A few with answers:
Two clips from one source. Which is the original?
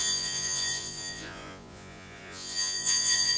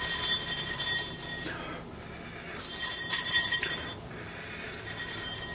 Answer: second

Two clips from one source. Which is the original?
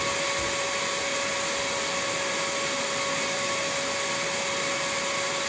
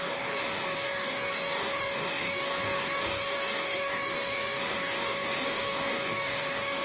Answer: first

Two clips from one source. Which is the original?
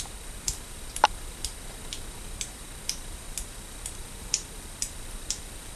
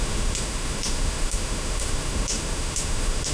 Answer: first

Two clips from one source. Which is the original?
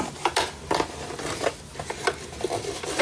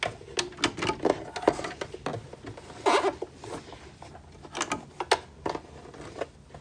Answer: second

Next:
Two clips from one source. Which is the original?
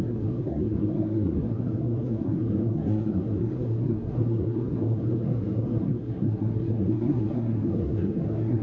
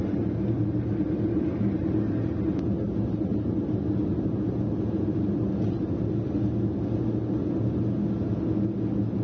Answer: second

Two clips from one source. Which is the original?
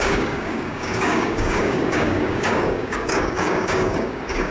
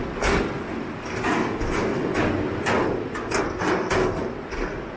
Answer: second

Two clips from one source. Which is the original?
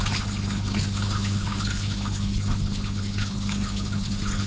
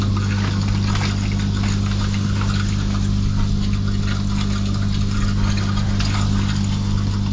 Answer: second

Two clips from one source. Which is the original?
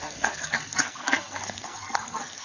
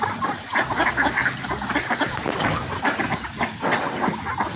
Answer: second